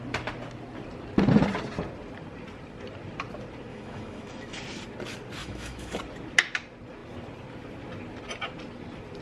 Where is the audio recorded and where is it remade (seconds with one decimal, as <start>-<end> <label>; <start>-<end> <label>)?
0.0-3.7 recorded; 3.7-4.6 remade; 4.6-5.4 recorded; 5.4-6.0 remade; 6.0-9.2 recorded